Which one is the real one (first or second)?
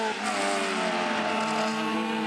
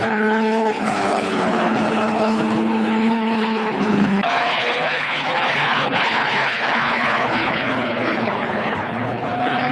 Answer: first